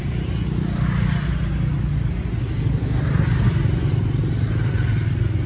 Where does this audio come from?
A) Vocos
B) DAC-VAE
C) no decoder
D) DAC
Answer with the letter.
C